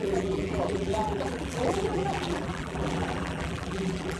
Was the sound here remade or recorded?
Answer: remade